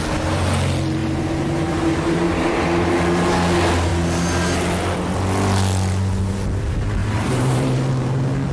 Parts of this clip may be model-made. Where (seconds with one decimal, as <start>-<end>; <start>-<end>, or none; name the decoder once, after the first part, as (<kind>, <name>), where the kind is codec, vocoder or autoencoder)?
1.0-2.9 (vocoder, BigVGAN v2); 7.0-7.9